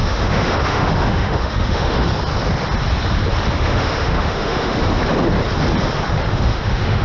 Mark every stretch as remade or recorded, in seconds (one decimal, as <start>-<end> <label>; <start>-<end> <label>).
0.0-2.1 remade; 2.1-3.5 recorded; 3.5-4.9 remade; 4.9-6.3 recorded; 6.3-7.0 remade